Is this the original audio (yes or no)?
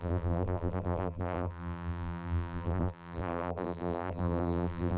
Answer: no